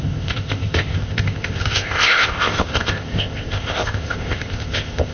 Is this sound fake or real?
fake